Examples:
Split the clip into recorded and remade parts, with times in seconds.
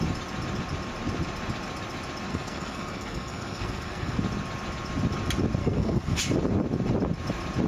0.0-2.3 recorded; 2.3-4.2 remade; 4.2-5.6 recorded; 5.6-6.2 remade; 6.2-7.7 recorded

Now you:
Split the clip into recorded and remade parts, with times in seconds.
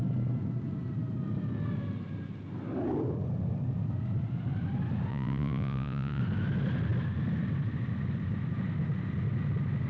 0.0-5.1 recorded; 5.1-6.2 remade; 6.2-9.9 recorded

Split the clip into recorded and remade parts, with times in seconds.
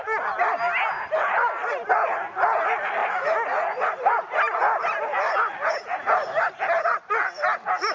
0.0-7.9 recorded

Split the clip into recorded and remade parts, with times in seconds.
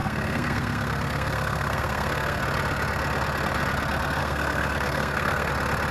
0.0-2.4 remade; 2.4-4.2 recorded; 4.2-5.5 remade; 5.5-5.9 recorded